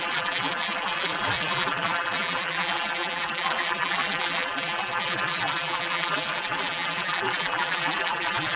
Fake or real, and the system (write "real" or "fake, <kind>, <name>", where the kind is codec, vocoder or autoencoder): fake, vocoder, BigVGAN v2